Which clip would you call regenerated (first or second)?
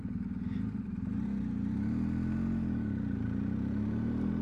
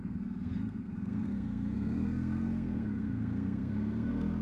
second